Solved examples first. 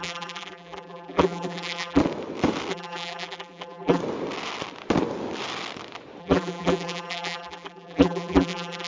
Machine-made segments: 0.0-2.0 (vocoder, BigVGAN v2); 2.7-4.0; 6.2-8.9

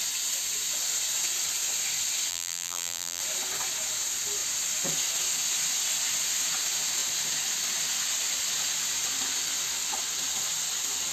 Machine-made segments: 2.3-3.2 (vocoder, BigVGAN v2)

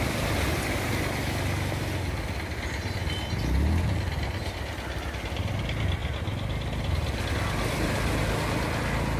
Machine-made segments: none

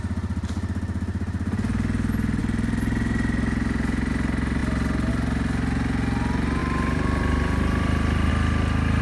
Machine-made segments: 6.6-8.3 (vocoder, BigVGAN v2)

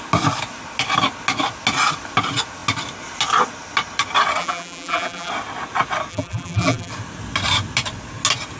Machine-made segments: 4.4-5.3 (vocoder, BigVGAN v2); 6.1-6.9

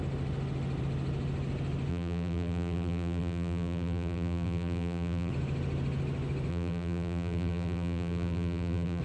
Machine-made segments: 1.9-5.3 (vocoder, BigVGAN v2); 6.5-9.0